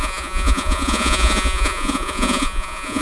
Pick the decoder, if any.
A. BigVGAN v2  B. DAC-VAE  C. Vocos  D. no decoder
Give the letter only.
C